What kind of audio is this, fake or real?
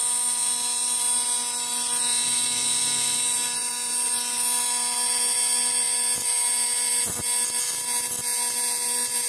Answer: real